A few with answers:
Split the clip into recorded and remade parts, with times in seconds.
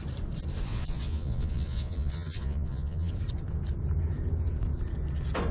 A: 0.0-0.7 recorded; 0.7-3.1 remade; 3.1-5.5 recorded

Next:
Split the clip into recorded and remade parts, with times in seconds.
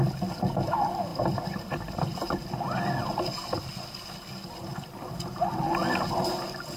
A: 0.0-6.8 recorded